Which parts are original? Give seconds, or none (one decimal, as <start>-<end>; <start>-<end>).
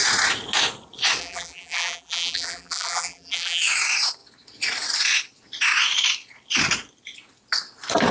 0.0-1.2; 3.6-8.1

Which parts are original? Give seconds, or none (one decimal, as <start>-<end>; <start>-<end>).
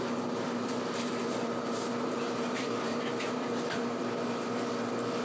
0.0-1.2; 4.0-5.2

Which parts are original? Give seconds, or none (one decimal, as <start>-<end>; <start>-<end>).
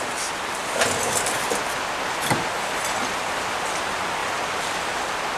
0.0-0.6; 3.8-4.2; 4.8-5.4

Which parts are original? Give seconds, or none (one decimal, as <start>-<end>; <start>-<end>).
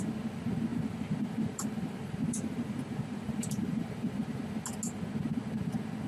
0.0-0.7; 4.4-6.1